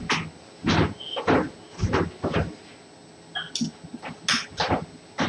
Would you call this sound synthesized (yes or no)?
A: no